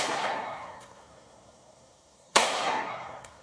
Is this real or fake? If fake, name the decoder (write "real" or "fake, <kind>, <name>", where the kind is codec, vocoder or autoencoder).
fake, codec, SNAC